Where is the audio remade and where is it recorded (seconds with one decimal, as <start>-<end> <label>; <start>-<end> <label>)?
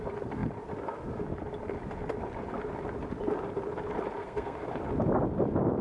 0.0-4.2 recorded; 4.2-4.7 remade; 4.7-5.8 recorded